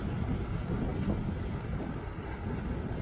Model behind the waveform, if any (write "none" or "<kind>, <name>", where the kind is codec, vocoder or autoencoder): none